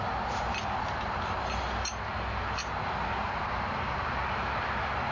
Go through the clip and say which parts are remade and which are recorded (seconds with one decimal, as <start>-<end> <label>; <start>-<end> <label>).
0.0-5.1 recorded